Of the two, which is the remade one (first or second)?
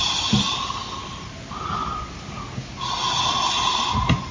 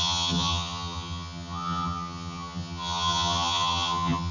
second